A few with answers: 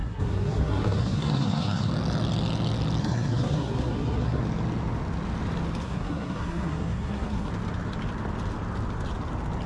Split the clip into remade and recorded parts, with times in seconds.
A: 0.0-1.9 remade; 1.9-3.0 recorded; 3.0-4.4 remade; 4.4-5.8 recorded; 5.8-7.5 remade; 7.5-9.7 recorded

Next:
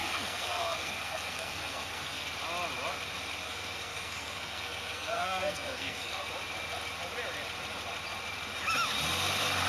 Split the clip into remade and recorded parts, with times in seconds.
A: 0.0-2.3 remade; 2.3-3.4 recorded; 3.4-6.3 remade; 6.3-9.7 recorded

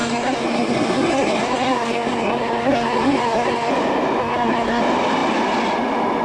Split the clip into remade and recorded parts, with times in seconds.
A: 0.0-3.7 remade; 3.7-4.2 recorded; 4.2-4.8 remade; 4.8-6.2 recorded

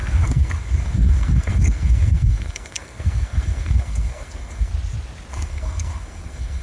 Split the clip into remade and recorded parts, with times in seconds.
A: 0.0-4.7 remade; 4.7-5.3 recorded; 5.3-6.6 remade

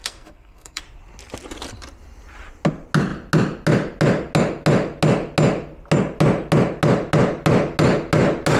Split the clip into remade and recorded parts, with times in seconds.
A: 0.0-0.8 remade; 0.8-8.6 recorded